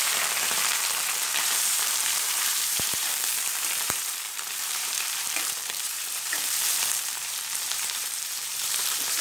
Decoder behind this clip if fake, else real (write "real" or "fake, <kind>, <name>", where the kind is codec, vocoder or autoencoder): fake, vocoder, BigVGAN v2